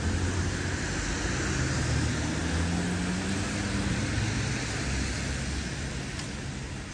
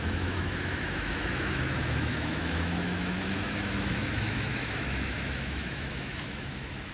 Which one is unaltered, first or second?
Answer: first